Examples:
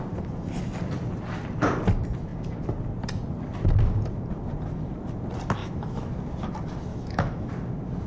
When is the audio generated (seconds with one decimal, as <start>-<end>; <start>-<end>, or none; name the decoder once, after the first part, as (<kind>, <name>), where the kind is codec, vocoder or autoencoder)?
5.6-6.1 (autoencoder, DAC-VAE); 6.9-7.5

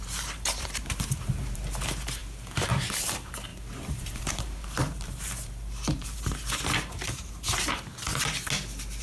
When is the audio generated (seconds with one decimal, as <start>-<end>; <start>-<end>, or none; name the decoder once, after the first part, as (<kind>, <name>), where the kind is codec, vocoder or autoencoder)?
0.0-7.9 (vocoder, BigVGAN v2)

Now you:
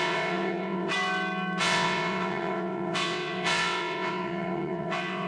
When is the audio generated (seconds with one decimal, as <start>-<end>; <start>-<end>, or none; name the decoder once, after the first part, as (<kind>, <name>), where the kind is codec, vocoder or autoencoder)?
0.0-0.9 (vocoder, WaveNeXt); 1.6-5.3